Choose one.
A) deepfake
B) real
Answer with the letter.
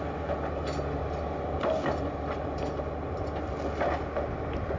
B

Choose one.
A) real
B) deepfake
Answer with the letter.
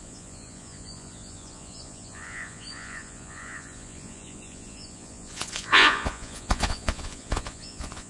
B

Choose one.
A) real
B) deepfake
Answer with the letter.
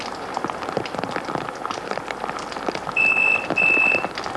A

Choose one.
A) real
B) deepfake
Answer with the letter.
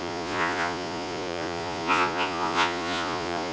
B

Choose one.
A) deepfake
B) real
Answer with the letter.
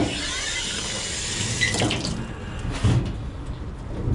B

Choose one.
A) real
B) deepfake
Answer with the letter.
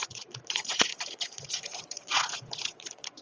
B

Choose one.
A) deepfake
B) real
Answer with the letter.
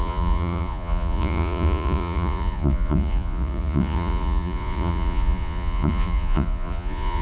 A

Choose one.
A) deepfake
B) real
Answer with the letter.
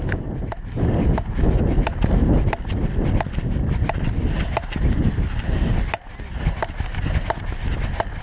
B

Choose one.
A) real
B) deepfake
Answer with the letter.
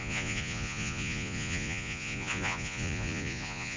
B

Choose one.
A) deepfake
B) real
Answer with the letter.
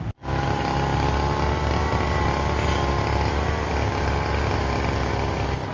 B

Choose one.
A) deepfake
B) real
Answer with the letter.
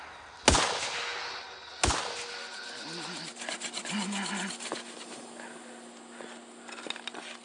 B